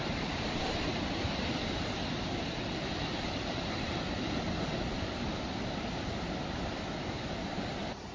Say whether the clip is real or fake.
fake